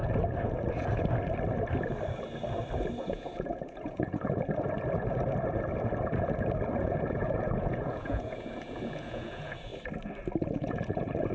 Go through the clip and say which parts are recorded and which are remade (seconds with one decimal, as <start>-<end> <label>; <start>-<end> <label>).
0.0-3.0 recorded; 3.0-4.4 remade; 4.4-6.8 recorded; 6.8-9.7 remade; 9.7-10.4 recorded; 10.4-11.3 remade